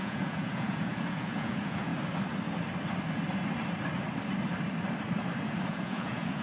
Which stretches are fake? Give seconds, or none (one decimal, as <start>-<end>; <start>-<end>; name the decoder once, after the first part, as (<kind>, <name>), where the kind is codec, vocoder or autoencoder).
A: 0.0-1.9 (vocoder, Vocos); 5.7-6.4